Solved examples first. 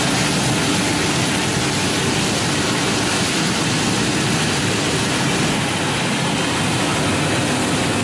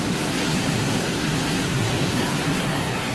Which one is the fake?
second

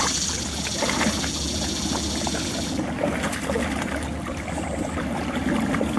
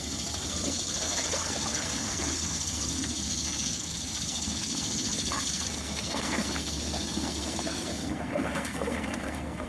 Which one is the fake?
second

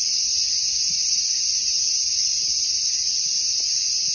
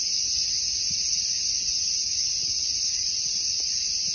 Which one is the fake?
second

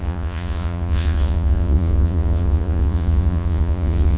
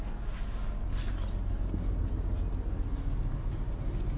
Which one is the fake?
first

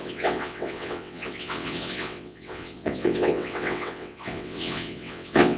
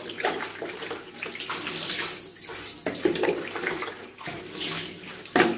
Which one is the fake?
first